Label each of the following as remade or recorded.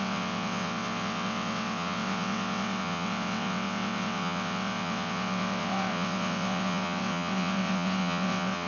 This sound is remade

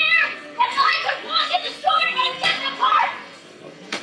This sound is remade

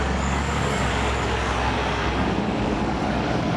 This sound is remade